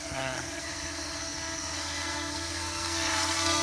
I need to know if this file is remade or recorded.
remade